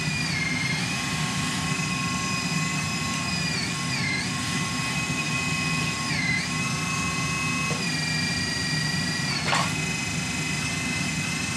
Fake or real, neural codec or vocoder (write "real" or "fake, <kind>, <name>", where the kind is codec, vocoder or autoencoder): real